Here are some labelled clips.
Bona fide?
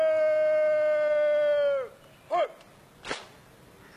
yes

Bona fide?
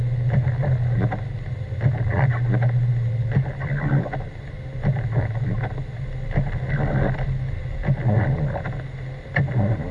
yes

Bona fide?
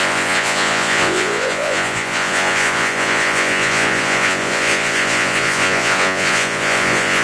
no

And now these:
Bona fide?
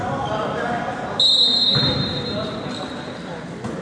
yes